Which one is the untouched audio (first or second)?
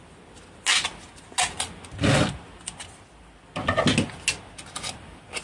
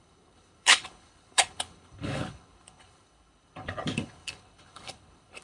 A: first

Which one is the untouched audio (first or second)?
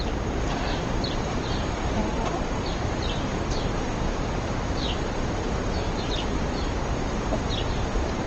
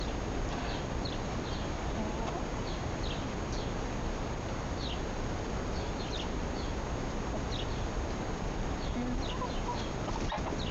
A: second